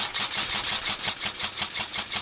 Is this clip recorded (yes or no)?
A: no